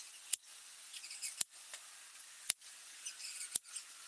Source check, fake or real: fake